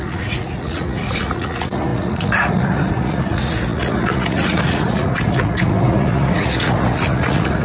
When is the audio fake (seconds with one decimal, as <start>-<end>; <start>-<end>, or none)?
0.0-7.6

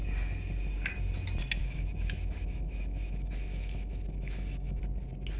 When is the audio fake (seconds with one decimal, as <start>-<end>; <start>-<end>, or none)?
1.6-4.8

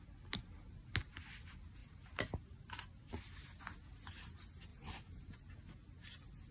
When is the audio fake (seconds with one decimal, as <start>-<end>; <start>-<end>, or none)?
1.8-3.6; 4.7-5.7

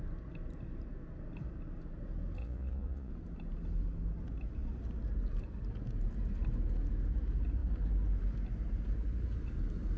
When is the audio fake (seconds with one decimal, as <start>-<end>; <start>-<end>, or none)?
2.4-3.1

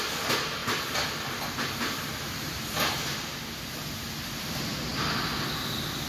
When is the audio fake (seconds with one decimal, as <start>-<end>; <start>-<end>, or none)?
none

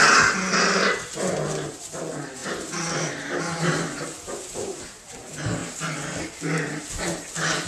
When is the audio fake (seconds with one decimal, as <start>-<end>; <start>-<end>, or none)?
2.4-3.4